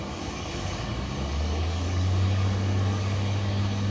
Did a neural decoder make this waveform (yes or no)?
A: yes